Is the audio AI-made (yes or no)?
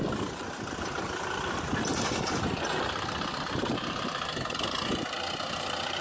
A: no